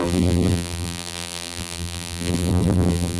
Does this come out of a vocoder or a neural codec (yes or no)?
yes